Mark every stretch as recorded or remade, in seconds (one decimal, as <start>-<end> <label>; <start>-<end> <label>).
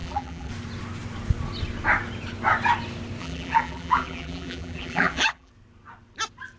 0.0-0.5 remade; 0.5-3.2 recorded; 3.2-5.5 remade; 5.5-6.6 recorded